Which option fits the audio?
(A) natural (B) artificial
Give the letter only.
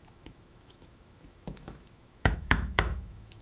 B